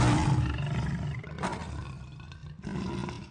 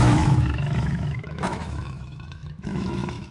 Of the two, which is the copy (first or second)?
second